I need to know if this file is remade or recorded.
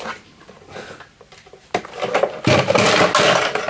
recorded